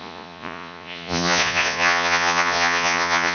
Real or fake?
fake